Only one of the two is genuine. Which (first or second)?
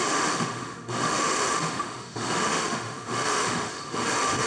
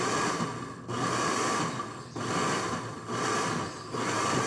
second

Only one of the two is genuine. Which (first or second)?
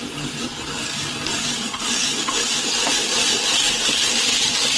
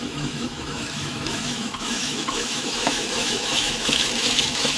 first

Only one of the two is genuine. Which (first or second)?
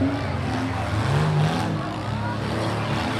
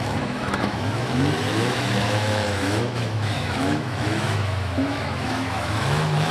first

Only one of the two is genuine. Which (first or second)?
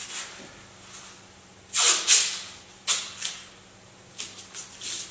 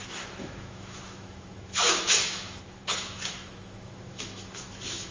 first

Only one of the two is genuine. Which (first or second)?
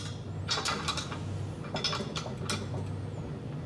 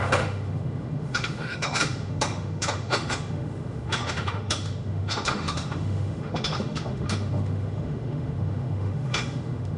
first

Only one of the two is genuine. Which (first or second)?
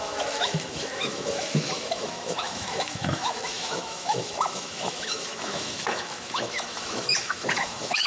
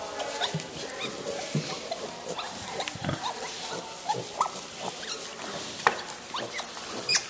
second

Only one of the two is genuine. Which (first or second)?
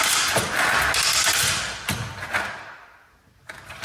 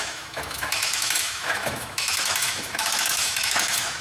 first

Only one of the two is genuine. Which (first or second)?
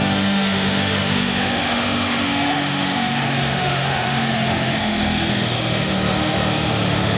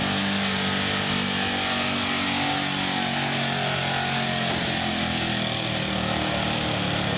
second